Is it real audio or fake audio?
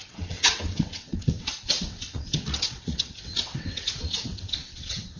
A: fake